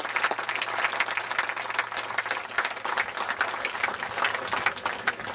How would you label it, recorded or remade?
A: recorded